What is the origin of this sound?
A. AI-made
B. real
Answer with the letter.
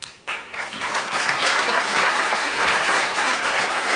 A